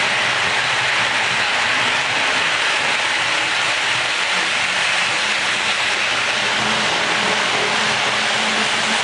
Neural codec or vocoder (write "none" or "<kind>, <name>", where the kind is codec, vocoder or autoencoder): none